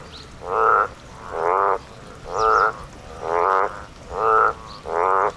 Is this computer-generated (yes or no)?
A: no